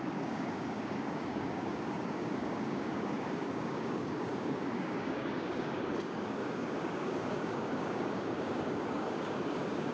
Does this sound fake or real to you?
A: fake